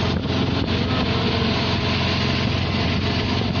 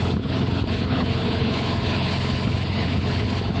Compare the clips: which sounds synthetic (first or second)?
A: second